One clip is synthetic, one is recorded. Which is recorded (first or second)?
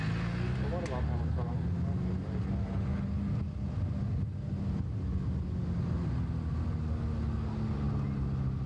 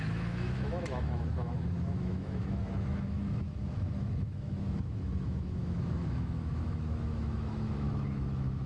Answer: first